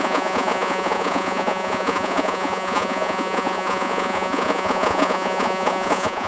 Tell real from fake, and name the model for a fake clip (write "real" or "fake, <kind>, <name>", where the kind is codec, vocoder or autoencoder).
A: fake, vocoder, Vocos